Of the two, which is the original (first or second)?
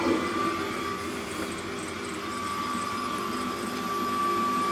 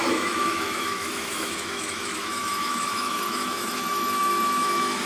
first